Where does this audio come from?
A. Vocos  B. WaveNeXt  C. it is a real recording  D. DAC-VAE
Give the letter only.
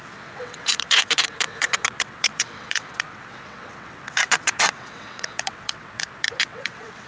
B